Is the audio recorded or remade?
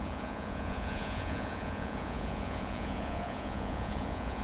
remade